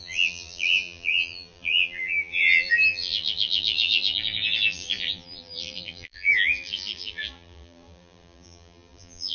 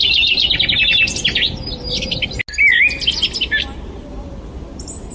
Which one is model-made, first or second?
first